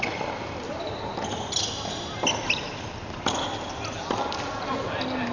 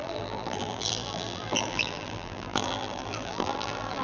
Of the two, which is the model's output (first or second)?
second